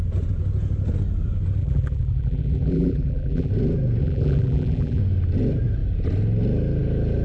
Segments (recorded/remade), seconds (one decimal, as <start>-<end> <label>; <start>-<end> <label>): 0.0-1.6 recorded; 1.6-3.5 remade; 3.5-4.0 recorded; 4.0-5.0 remade; 5.0-7.2 recorded